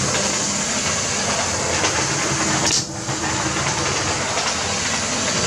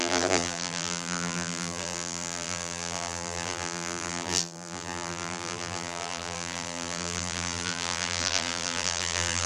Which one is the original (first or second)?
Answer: first